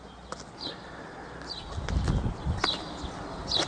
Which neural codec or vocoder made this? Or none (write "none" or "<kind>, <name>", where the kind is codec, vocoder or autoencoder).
none